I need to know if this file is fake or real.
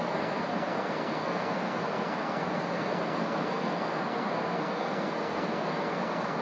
fake